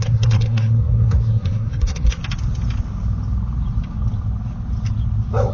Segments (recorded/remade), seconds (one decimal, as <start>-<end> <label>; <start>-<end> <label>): 0.0-2.2 remade; 2.2-5.5 recorded